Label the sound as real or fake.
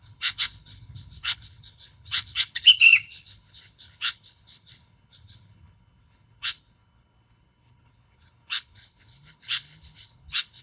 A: fake